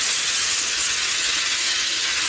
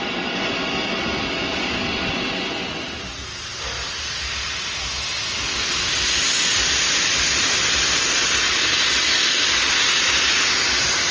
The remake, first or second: first